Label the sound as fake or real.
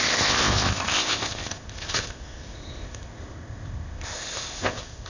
fake